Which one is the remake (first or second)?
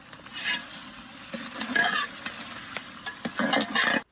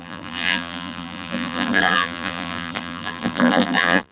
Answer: second